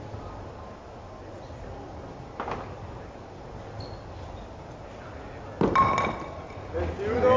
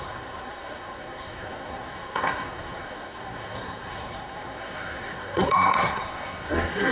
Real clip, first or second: first